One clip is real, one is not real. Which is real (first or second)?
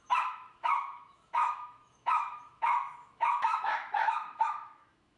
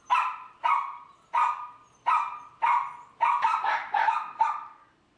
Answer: second